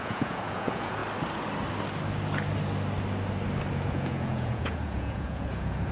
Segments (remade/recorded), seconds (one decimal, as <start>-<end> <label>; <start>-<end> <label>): 0.0-1.0 remade; 1.0-3.7 recorded; 3.7-5.9 remade